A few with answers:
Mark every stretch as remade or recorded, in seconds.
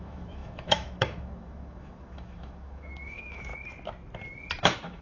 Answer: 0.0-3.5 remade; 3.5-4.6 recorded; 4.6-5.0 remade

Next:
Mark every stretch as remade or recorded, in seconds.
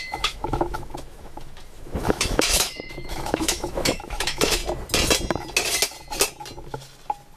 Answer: 0.0-4.6 remade; 4.6-7.4 recorded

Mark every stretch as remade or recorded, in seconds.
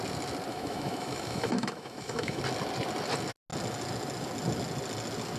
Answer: 0.0-0.5 recorded; 0.5-2.4 remade; 2.4-5.4 recorded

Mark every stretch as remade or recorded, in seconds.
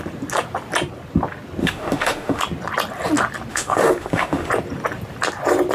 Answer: 0.0-1.6 recorded; 1.6-2.4 remade; 2.4-3.5 recorded; 3.5-4.5 remade; 4.5-5.7 recorded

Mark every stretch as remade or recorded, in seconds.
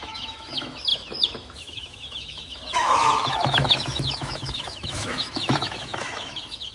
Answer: 0.0-6.7 remade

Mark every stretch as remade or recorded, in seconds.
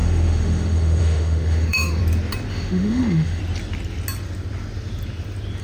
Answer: 0.0-2.0 remade; 2.0-2.5 recorded; 2.5-3.4 remade; 3.4-5.6 recorded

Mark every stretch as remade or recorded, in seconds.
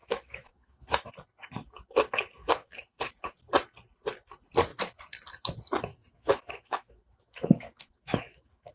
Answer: 0.0-1.1 remade; 1.1-2.6 recorded; 2.6-3.1 remade; 3.1-5.9 recorded; 5.9-8.7 remade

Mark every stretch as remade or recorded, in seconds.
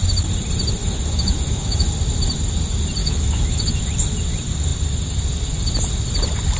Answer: 0.0-0.8 recorded; 0.8-1.9 remade; 1.9-3.0 recorded; 3.0-3.8 remade; 3.8-6.6 recorded